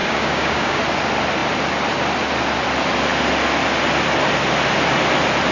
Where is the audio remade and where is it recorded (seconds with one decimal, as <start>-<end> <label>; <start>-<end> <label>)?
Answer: 0.0-0.8 remade; 0.8-5.5 recorded